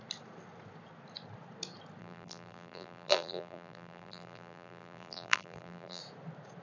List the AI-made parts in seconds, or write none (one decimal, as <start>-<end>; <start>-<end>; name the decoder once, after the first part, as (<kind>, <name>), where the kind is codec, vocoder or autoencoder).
2.0-6.0 (vocoder, BigVGAN v2)